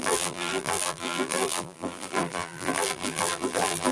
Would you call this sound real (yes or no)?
no